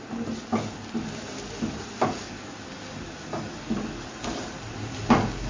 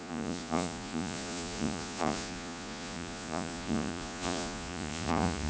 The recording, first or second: first